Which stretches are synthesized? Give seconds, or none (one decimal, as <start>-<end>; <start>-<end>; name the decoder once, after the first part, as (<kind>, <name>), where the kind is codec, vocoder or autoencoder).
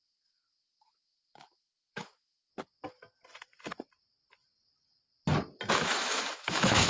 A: 0.0-2.5 (autoencoder, DAC-VAE); 5.7-6.9